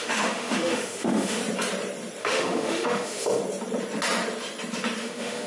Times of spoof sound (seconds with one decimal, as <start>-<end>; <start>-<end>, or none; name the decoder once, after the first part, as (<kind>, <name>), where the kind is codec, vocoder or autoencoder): 0.0-1.4 (autoencoder, DAC-VAE); 2.2-3.4; 5.0-5.5